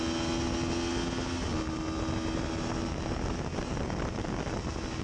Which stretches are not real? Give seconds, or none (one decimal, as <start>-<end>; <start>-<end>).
none